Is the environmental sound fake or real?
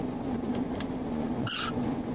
fake